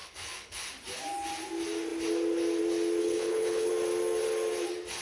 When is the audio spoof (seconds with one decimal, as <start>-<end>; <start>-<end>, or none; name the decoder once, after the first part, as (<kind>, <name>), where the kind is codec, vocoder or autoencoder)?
0.0-0.7 (codec, HILCodec); 3.0-3.7